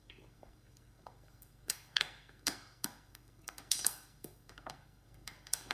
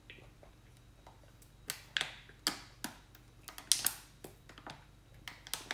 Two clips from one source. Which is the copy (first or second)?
first